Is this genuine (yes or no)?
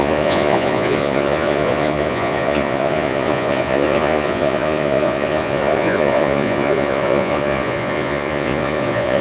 no